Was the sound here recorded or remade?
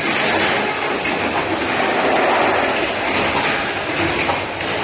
recorded